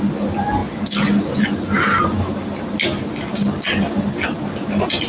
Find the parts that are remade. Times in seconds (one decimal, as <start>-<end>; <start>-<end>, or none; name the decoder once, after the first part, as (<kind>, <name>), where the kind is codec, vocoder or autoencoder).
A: none